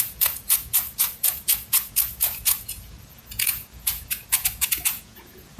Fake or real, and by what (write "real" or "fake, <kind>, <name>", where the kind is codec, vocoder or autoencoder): fake, vocoder, Vocos